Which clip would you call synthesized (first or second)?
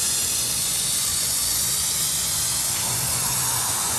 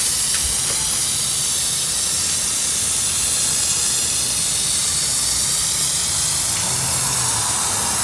first